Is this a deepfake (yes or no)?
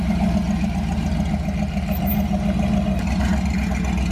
no